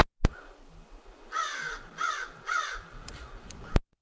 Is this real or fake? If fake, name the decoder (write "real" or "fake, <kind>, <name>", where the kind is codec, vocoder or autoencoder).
real